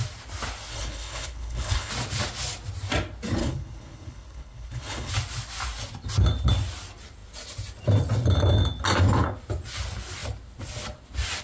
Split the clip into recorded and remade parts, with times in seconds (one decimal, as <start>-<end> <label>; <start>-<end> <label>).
0.0-0.7 recorded; 0.7-1.9 remade; 1.9-3.4 recorded; 3.4-5.1 remade; 5.1-11.4 recorded